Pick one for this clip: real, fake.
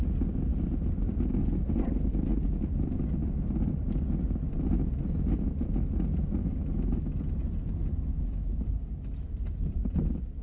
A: real